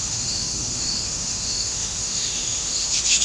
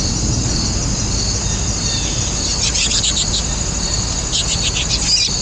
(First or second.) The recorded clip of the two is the second